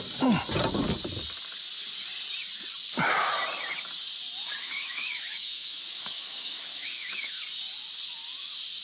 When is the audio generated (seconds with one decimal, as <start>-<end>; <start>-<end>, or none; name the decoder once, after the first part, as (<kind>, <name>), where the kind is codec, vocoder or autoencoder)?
4.6-7.4 (autoencoder, DAC-VAE)